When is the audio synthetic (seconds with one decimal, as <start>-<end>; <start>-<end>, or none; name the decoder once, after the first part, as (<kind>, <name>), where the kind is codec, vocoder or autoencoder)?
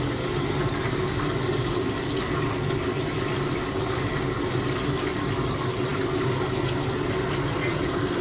none